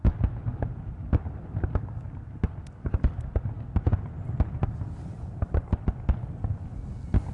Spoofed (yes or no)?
no